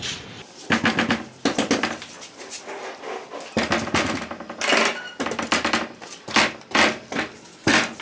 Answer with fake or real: real